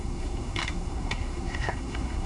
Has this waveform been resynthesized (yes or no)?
yes